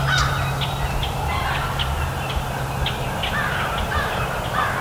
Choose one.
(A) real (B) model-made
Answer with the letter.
A